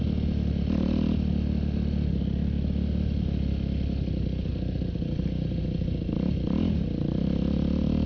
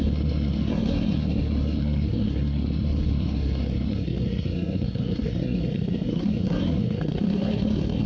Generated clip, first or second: second